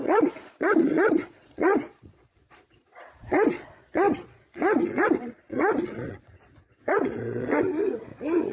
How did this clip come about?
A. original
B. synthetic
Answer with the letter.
B